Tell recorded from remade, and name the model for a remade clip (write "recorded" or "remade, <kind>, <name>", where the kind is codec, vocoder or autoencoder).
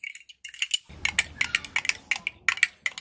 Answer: recorded